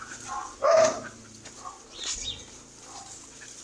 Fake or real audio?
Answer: real